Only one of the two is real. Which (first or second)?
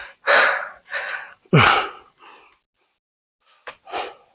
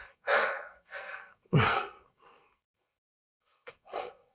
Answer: first